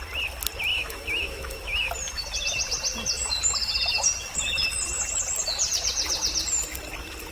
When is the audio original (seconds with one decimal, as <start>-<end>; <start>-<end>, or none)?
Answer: 0.0-0.7; 1.9-7.3